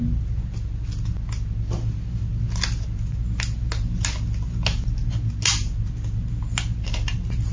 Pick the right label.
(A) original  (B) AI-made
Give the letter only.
A